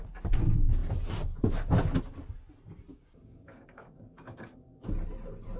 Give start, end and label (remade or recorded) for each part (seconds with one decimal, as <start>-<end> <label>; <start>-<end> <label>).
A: 0.0-2.9 recorded; 2.9-4.9 remade; 4.9-5.6 recorded